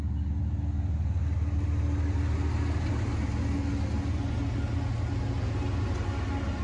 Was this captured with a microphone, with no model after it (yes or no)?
yes